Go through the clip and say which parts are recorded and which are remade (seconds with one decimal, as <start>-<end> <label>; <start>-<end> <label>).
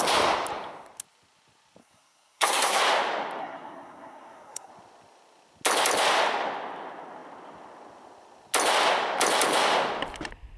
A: 0.0-1.8 recorded; 1.8-2.8 remade; 2.8-3.4 recorded; 3.4-4.7 remade; 4.7-10.6 recorded